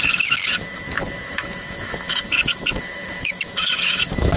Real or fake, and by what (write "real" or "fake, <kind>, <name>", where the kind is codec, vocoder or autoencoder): fake, autoencoder, DAC-VAE